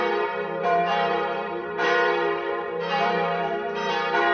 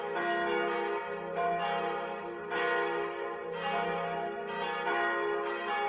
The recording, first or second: second